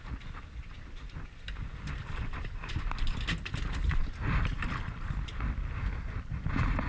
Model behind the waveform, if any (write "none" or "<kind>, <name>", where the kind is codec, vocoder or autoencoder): none